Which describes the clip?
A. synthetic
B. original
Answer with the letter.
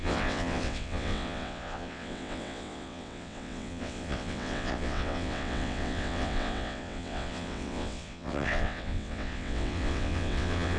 A